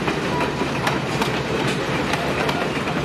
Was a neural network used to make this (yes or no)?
yes